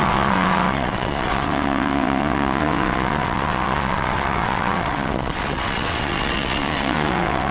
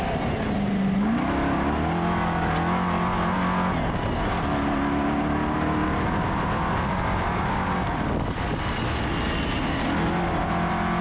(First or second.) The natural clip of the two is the second